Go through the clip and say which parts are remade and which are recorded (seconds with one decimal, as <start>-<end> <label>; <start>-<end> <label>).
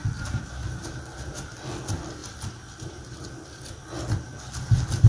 0.0-5.1 recorded